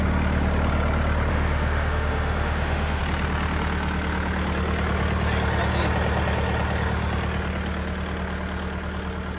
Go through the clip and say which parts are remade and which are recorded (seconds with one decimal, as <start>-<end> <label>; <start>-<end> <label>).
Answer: 0.0-1.3 recorded; 1.3-3.0 remade; 3.0-9.4 recorded